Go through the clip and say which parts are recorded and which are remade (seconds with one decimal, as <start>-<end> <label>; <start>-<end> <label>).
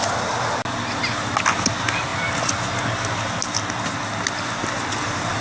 0.0-5.4 recorded